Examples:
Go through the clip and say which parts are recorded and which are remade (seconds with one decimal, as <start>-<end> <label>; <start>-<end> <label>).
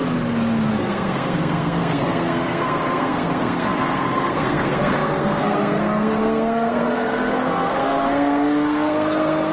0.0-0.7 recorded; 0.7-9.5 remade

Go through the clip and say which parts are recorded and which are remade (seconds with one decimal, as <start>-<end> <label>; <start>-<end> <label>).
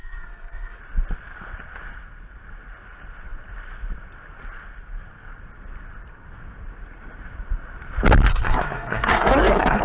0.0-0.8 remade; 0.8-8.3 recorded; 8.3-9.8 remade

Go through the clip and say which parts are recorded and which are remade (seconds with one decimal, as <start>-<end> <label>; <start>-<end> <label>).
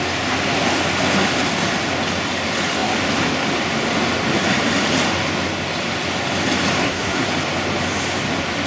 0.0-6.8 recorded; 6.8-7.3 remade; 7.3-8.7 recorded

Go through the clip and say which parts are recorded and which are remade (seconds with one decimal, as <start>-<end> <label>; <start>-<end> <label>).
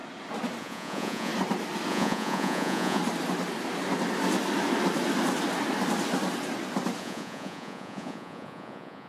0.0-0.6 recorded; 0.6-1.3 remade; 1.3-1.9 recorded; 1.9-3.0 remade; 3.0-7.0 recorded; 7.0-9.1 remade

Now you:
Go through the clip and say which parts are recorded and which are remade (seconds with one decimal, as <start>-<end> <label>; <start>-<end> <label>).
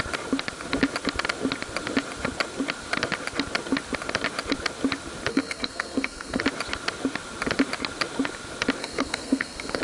0.0-5.3 recorded; 5.3-6.4 remade; 6.4-8.8 recorded; 8.8-9.8 remade